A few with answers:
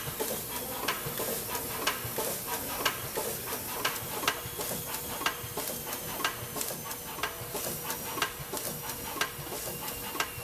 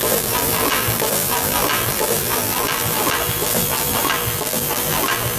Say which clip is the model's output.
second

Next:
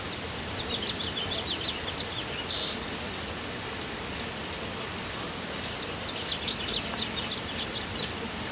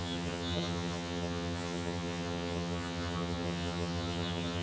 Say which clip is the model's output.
second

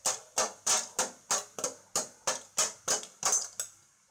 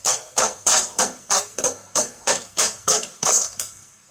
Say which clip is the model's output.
second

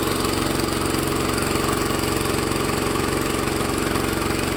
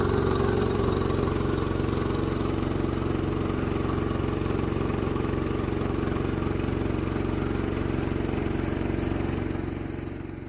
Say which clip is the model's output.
second